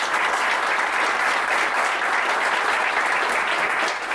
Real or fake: real